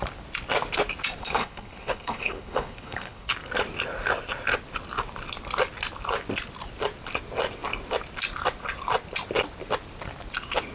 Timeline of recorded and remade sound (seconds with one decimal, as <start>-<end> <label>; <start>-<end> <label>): 0.0-1.2 recorded; 1.2-3.3 remade; 3.3-10.7 recorded